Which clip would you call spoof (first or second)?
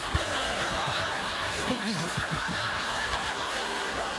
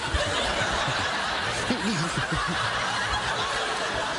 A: first